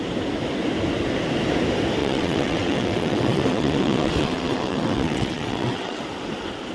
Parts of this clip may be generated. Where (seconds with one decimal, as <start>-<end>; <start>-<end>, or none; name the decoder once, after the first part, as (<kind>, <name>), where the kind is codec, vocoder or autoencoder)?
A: 2.0-6.0 (vocoder, WaveNeXt)